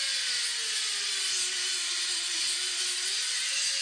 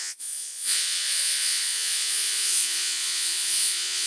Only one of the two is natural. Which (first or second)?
first